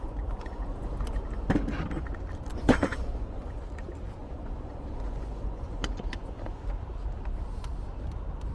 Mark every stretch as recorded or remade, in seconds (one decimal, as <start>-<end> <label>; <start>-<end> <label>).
0.0-0.9 remade; 0.9-2.5 recorded; 2.5-3.6 remade; 3.6-4.2 recorded; 4.2-6.7 remade; 6.7-8.5 recorded